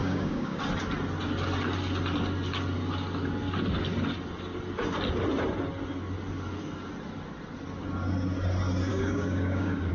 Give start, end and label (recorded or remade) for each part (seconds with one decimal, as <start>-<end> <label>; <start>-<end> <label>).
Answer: 0.0-0.6 remade; 0.6-8.9 recorded; 8.9-9.9 remade